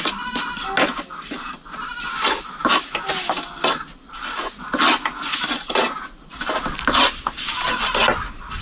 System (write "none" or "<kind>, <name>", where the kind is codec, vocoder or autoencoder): none